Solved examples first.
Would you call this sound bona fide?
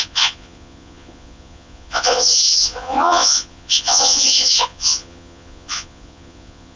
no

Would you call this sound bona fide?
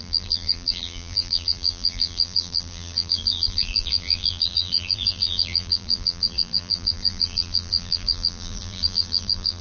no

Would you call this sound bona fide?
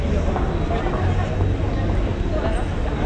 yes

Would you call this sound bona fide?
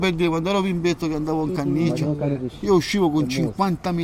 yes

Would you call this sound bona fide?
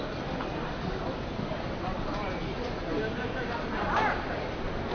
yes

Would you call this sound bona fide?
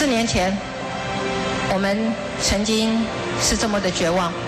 yes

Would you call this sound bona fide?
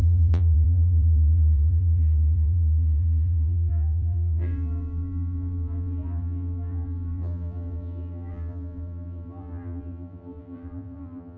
no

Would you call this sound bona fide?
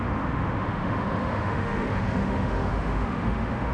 no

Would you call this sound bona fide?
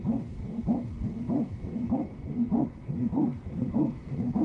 no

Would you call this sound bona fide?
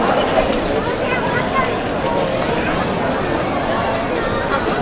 yes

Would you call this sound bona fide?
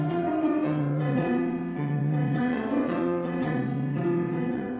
no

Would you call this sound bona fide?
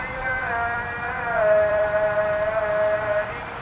no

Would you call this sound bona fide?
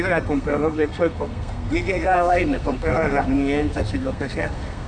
no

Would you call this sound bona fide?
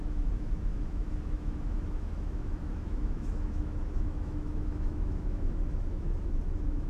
no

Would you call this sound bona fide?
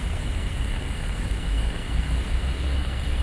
no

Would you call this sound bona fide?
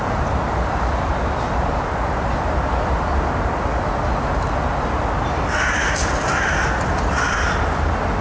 yes